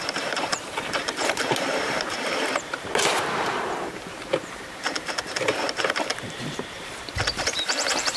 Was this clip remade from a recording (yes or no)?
yes